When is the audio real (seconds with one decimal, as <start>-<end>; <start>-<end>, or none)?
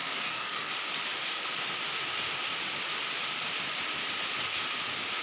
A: 0.7-5.2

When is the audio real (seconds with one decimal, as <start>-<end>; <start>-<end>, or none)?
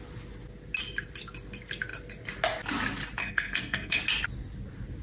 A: 0.0-3.2; 4.0-5.0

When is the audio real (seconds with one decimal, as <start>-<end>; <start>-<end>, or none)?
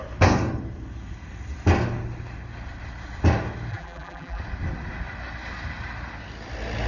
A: 0.0-3.7; 4.4-6.9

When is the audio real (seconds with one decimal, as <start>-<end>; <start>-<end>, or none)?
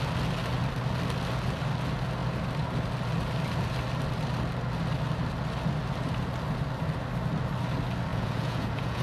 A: 0.0-8.1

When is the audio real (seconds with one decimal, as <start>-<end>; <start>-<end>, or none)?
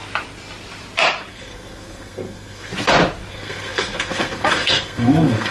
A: 0.0-1.3; 2.7-3.3